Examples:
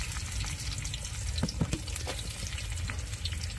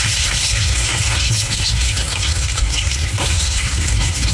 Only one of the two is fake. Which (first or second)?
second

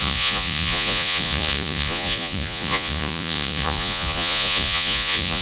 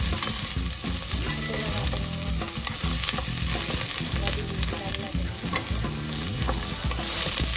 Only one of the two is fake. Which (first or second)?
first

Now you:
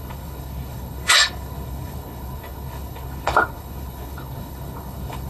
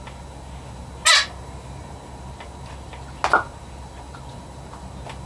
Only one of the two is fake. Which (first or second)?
first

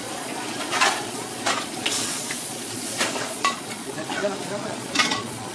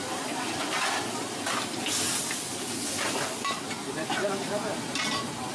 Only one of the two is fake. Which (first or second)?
first